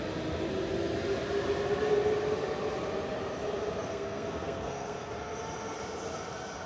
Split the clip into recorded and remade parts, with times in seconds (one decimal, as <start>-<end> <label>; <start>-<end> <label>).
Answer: 0.0-3.9 recorded; 3.9-5.1 remade; 5.1-6.7 recorded